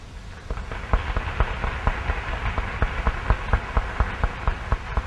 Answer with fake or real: real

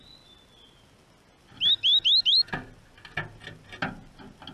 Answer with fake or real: real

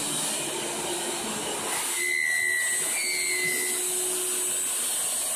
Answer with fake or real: real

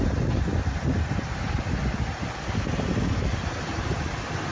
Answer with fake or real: real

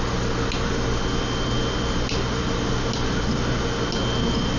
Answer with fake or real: real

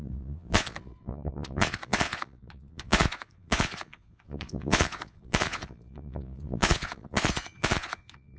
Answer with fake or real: fake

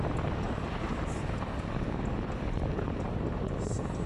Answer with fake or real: real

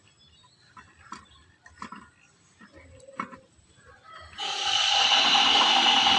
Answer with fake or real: real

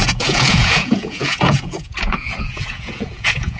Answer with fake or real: fake